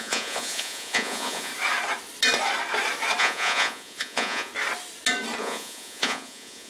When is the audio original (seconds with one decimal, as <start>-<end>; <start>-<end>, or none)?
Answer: 1.5-3.2; 4.5-5.4